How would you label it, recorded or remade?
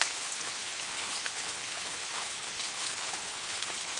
remade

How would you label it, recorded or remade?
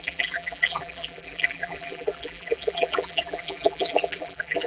remade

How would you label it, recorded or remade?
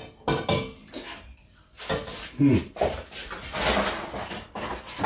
recorded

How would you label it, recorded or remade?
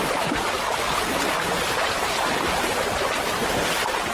remade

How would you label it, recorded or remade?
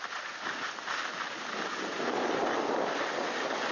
recorded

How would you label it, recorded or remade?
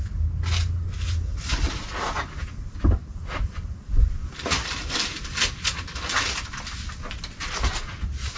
recorded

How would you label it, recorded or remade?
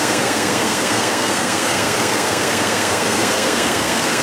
remade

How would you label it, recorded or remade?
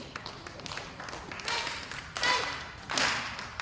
recorded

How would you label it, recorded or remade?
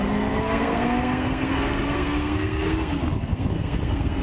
remade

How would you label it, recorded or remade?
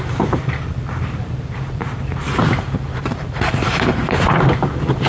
remade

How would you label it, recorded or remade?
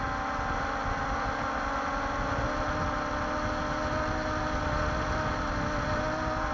recorded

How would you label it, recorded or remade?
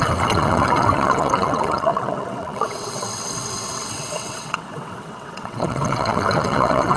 remade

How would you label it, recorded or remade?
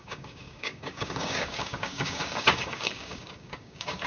remade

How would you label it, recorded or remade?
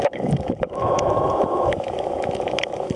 remade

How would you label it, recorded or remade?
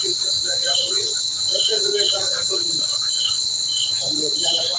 remade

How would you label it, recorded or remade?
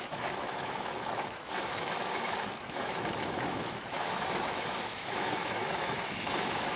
remade